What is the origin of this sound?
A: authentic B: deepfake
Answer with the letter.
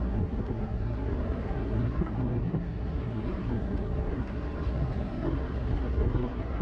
B